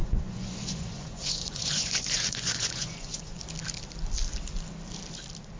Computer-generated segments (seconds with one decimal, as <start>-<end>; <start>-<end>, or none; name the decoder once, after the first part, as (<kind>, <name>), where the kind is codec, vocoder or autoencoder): 0.0-3.4 (vocoder, Vocos)